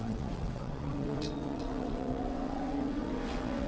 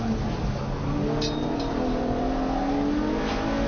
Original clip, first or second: second